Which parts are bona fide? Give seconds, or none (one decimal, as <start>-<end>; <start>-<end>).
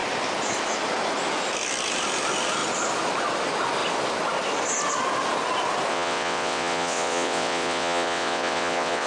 0.0-5.9